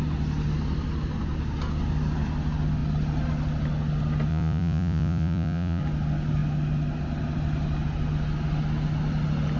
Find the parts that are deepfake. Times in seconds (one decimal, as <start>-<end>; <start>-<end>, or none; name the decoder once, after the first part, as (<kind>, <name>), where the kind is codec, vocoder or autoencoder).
4.3-5.8 (vocoder, Vocos)

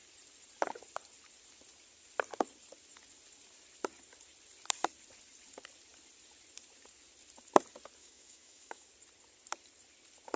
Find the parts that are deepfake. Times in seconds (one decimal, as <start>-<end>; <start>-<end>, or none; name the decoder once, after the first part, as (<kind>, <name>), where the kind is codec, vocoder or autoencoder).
8.0-8.9 (autoencoder, DAC-VAE)

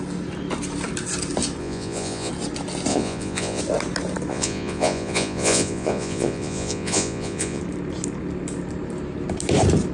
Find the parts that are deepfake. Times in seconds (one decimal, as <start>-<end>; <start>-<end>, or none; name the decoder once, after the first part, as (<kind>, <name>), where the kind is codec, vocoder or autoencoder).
1.6-2.3 (vocoder, Vocos); 2.9-3.6; 4.3-7.6

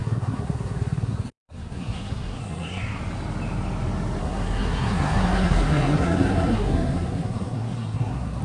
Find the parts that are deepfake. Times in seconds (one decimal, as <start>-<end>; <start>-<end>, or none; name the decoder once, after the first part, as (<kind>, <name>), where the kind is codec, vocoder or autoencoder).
0.0-3.0 (codec, SNAC); 4.2-8.4